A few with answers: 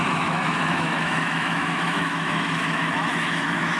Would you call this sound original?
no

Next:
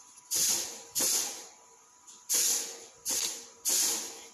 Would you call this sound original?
yes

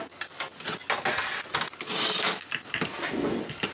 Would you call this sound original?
yes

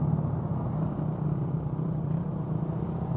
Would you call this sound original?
yes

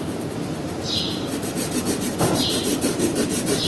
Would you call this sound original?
no